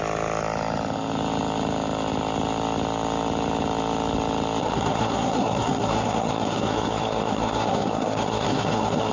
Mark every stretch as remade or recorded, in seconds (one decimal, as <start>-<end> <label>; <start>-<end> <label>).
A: 0.0-4.6 recorded; 4.6-9.1 remade